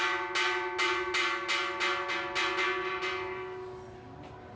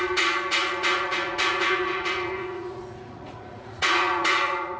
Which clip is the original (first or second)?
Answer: first